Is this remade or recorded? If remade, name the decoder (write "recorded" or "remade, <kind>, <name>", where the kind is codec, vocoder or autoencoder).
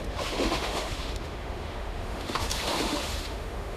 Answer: remade, autoencoder, DAC-VAE